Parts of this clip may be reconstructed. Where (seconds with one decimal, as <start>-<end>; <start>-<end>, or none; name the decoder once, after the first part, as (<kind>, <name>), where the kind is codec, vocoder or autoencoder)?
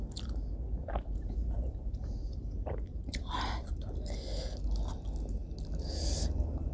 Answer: 0.8-4.0 (vocoder, BigVGAN v2)